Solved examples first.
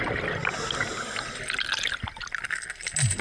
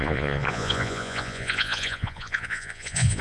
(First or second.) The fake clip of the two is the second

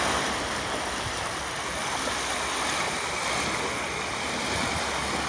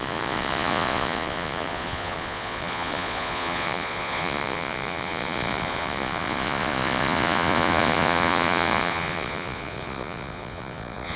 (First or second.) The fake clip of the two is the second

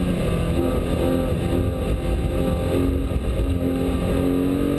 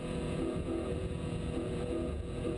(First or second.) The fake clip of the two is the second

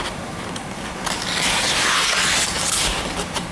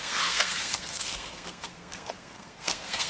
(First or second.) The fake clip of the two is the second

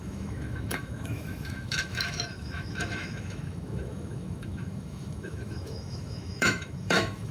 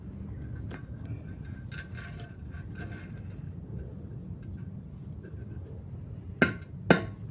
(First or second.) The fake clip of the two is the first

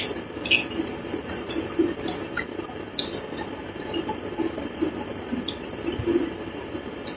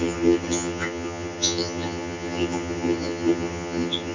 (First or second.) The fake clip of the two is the second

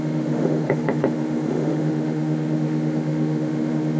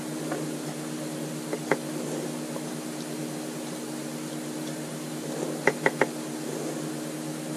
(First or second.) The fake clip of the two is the first